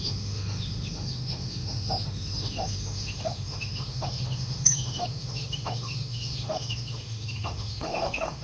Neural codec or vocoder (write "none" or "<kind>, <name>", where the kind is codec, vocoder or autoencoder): autoencoder, DAC-VAE